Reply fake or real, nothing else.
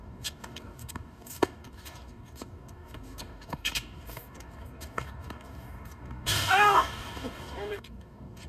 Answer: fake